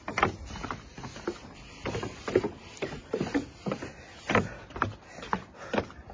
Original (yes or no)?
yes